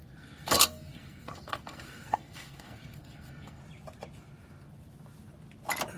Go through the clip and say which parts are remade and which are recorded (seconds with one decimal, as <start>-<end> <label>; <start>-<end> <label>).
0.0-3.6 remade; 3.6-6.0 recorded